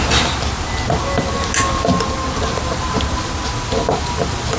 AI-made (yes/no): no